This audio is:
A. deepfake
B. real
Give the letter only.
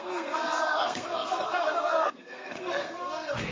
A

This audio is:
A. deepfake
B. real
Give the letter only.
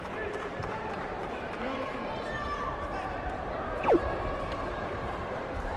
A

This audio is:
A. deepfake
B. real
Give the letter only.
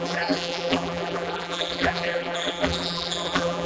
A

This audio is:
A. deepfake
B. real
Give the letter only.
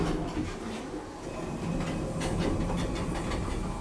B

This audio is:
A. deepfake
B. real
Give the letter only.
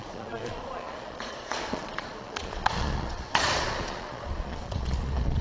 A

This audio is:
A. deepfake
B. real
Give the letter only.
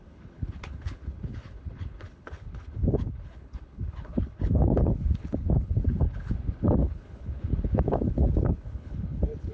A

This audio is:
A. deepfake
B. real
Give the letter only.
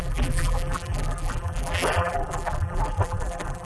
A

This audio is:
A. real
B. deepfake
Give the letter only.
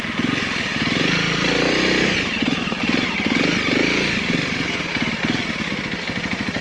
A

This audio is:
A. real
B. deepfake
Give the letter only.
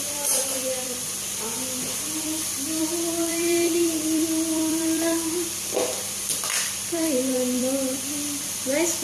B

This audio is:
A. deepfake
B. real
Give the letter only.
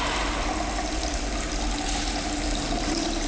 B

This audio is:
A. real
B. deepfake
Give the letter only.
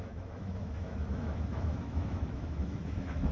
B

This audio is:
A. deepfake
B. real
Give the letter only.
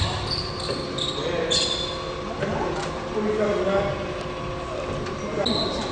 B